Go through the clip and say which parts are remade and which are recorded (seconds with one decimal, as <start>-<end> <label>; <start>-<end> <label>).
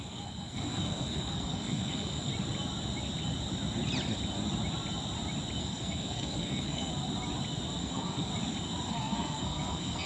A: 0.0-2.3 remade; 2.3-5.6 recorded; 5.6-6.9 remade; 6.9-7.8 recorded; 7.8-8.3 remade; 8.3-8.9 recorded; 8.9-10.1 remade